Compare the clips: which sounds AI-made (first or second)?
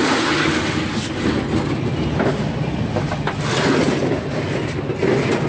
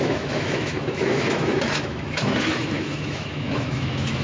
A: second